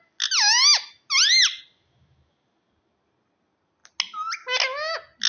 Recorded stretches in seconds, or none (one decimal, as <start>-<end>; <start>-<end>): 0.0-5.3